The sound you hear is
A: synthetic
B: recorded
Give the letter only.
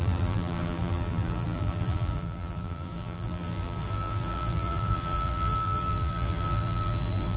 A